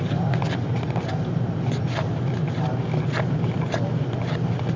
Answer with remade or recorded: recorded